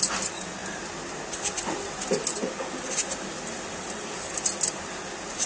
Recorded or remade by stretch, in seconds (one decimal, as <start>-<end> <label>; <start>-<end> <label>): 0.0-5.5 recorded